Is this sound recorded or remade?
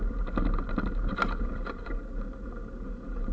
recorded